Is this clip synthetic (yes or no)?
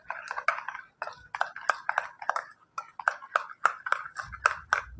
no